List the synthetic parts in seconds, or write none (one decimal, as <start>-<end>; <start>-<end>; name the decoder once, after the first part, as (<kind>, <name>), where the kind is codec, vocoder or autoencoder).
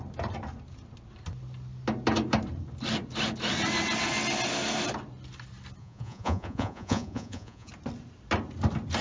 5.8-7.7 (vocoder, Vocos)